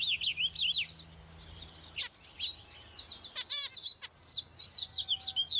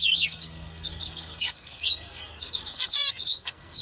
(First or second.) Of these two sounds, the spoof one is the second